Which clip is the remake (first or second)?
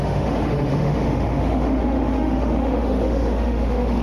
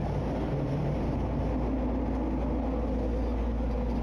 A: first